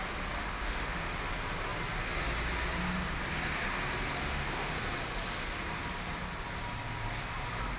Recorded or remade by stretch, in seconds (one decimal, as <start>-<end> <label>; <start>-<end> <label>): 0.0-0.4 recorded; 0.4-1.1 remade; 1.1-4.2 recorded; 4.2-4.7 remade; 4.7-7.8 recorded